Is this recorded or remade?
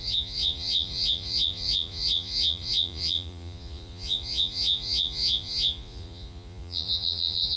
remade